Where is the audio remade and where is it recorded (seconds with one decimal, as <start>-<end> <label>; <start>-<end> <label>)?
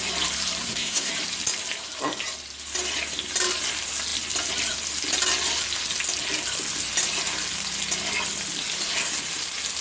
0.0-0.6 recorded; 0.6-1.1 remade; 1.1-9.8 recorded